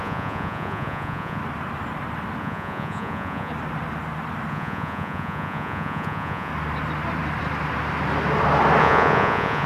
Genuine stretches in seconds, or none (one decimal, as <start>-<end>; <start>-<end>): 1.4-2.4; 3.5-4.5; 6.5-8.8